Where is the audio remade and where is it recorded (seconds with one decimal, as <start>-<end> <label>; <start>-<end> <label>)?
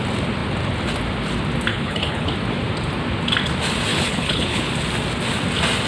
0.0-1.7 recorded; 1.7-2.3 remade; 2.3-3.9 recorded; 3.9-4.7 remade; 4.7-5.9 recorded